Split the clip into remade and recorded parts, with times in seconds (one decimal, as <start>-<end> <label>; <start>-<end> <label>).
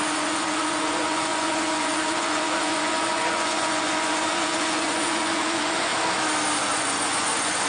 0.0-5.9 remade; 5.9-6.6 recorded; 6.6-7.7 remade